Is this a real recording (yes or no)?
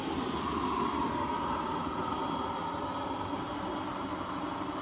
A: yes